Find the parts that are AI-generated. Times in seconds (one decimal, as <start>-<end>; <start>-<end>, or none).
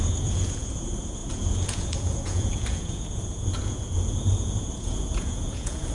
0.0-5.9